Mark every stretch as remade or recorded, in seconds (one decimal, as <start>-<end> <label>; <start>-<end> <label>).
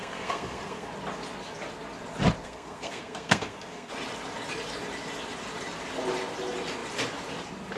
0.0-0.9 remade; 0.9-2.4 recorded; 2.4-3.9 remade; 3.9-7.8 recorded